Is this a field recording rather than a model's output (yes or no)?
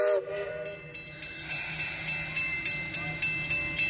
yes